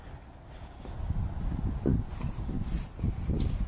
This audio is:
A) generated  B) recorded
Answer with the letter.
B